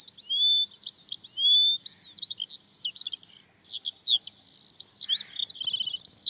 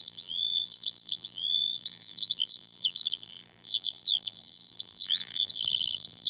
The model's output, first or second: second